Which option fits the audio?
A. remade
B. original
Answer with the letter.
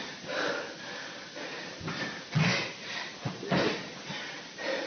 B